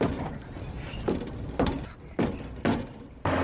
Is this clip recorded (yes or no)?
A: yes